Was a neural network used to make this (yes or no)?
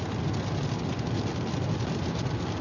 no